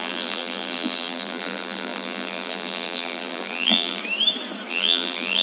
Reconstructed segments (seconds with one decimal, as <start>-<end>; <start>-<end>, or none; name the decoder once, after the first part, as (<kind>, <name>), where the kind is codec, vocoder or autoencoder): 0.0-4.0 (vocoder, BigVGAN v2); 4.7-5.4